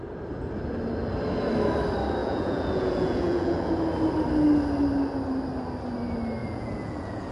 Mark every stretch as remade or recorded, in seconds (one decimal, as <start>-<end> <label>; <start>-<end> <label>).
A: 0.0-2.2 recorded; 2.2-3.7 remade; 3.7-6.4 recorded; 6.4-7.3 remade